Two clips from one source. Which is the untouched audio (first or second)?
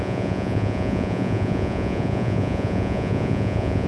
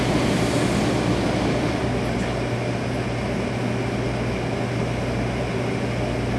second